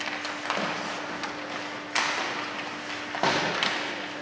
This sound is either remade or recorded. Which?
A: recorded